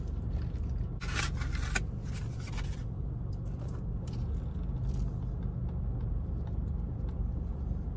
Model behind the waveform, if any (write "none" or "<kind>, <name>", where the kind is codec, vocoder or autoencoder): none